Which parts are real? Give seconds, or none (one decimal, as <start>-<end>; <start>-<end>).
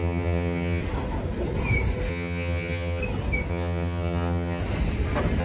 0.8-2.1; 3.0-3.5; 4.6-5.4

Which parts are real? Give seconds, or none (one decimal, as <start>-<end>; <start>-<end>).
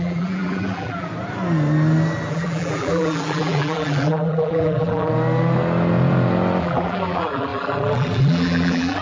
1.1-2.3; 5.1-6.6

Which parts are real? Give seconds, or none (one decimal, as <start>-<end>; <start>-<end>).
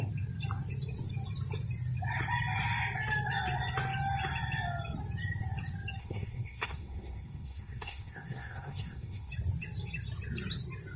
0.0-6.0; 9.3-11.0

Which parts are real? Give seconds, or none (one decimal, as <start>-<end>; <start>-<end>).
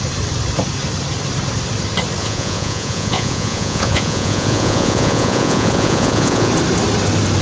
0.0-2.2; 6.5-7.4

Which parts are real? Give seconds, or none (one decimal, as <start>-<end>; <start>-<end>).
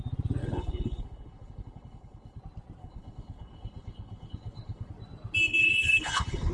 0.0-0.4; 2.4-2.8; 4.9-5.6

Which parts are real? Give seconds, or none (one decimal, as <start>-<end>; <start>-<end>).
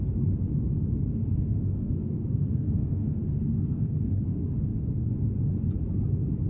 0.0-1.2; 5.1-6.5